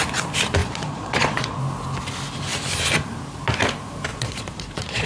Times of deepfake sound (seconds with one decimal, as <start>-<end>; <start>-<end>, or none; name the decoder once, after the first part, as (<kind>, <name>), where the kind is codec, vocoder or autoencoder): 0.6-1.6 (vocoder, Vocos); 4.1-5.1